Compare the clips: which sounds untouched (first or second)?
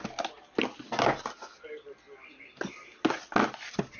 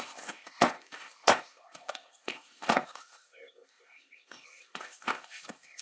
first